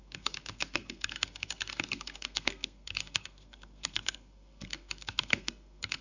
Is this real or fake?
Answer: fake